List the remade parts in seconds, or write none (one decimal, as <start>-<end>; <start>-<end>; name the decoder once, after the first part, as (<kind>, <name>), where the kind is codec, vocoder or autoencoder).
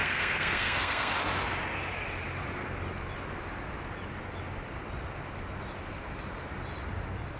0.0-1.1 (codec, SNAC)